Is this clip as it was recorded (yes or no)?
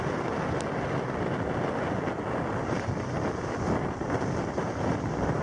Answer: yes